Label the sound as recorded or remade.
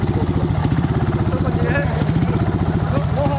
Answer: recorded